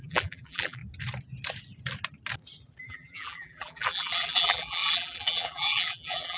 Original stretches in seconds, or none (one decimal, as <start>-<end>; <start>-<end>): 0.8-2.8